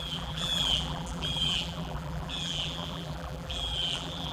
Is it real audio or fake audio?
fake